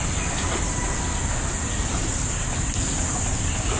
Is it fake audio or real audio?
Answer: real